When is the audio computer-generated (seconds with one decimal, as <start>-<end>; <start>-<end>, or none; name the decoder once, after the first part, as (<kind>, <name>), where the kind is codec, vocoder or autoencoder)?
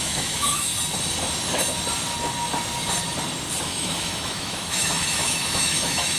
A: 0.0-0.7 (autoencoder, DAC-VAE); 3.6-6.2